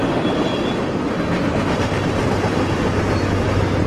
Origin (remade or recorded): recorded